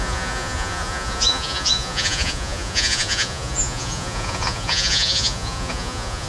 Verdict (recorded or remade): remade